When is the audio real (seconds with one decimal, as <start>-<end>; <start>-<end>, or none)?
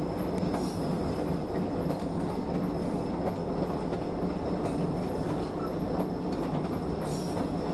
0.0-2.0; 2.5-7.7